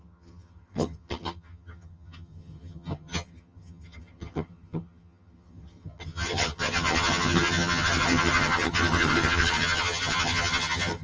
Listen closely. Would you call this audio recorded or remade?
remade